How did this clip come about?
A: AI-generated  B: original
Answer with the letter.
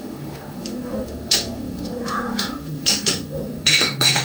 A